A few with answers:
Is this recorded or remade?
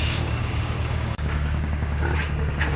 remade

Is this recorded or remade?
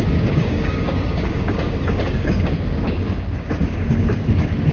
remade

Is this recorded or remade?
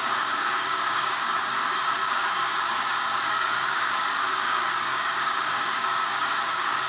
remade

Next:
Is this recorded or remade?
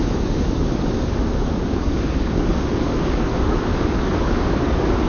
remade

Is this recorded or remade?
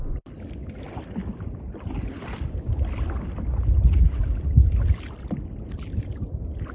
recorded